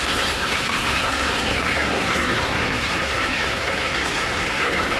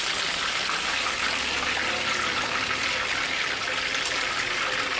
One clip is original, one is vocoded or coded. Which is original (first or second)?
second